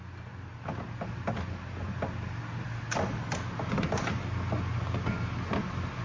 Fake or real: real